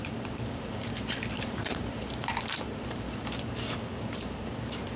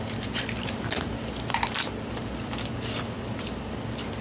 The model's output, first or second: first